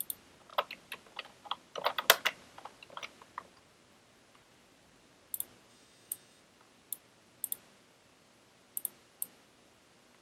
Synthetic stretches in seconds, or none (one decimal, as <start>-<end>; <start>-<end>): 5.7-6.4